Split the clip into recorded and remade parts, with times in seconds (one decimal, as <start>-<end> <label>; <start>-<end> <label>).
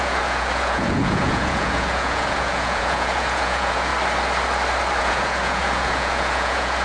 0.0-3.9 remade; 3.9-5.0 recorded; 5.0-6.8 remade